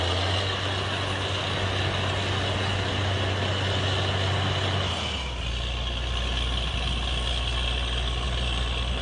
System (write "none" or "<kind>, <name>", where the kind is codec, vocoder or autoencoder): none